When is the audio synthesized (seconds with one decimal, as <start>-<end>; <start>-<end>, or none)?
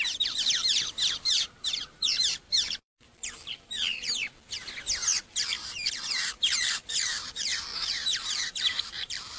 0.0-4.6; 5.2-9.4